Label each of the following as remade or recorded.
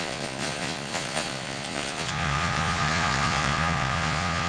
remade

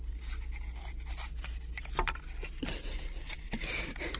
recorded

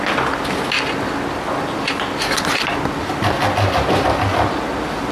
recorded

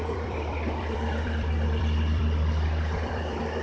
remade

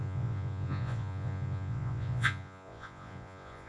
remade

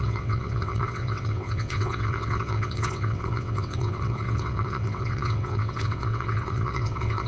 remade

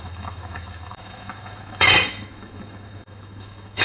remade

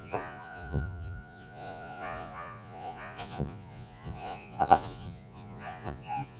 remade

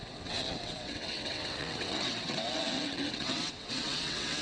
remade